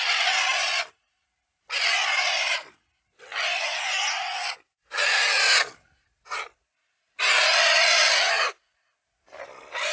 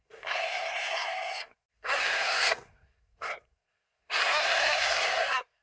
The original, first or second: first